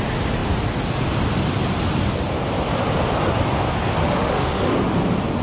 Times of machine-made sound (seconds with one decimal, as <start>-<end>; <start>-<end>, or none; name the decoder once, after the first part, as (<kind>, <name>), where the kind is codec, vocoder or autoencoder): 4.0-4.7 (autoencoder, DAC-VAE)